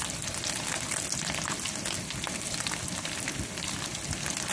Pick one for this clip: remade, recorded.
recorded